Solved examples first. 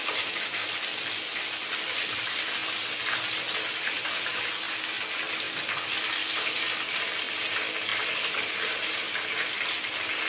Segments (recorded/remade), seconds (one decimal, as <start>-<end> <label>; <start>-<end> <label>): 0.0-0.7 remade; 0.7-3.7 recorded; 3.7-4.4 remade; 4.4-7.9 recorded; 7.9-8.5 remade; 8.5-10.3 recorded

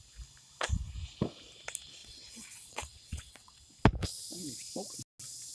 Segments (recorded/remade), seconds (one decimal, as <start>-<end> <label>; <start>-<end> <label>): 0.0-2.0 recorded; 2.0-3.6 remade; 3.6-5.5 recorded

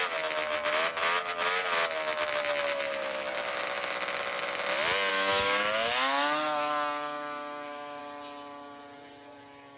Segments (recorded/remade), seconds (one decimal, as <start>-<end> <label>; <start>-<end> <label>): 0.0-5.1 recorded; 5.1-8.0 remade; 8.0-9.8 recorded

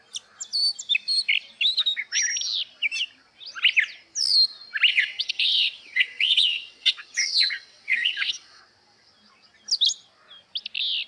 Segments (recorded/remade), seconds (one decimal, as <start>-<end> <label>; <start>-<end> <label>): 0.0-4.9 recorded; 4.9-8.6 remade; 8.6-11.1 recorded

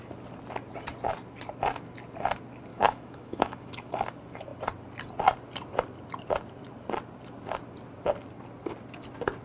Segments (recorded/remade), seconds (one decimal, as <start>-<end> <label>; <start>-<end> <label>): 0.0-2.7 recorded; 2.7-3.9 remade; 3.9-9.4 recorded

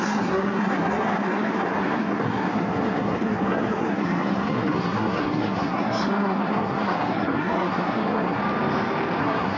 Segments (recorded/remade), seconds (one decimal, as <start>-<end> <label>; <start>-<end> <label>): 0.0-8.4 remade; 8.4-9.2 recorded; 9.2-9.6 remade

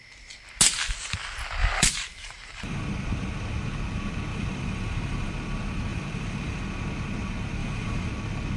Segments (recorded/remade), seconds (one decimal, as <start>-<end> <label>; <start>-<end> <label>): 0.0-1.6 recorded; 1.6-2.8 remade; 2.8-4.3 recorded; 4.3-5.3 remade; 5.3-5.9 recorded; 5.9-6.6 remade; 6.6-7.6 recorded; 7.6-8.1 remade; 8.1-8.6 recorded

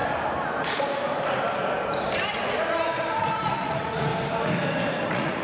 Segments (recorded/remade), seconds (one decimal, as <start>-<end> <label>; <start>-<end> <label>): 0.0-3.2 recorded; 3.2-4.1 remade; 4.1-5.0 recorded; 5.0-5.4 remade